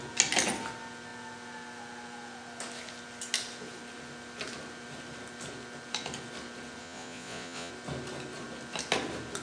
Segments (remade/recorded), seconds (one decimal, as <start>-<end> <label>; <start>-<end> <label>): 0.0-6.8 recorded; 6.8-7.7 remade; 7.7-9.4 recorded